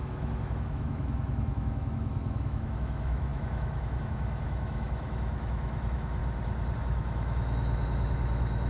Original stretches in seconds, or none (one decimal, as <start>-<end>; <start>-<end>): 6.2-6.8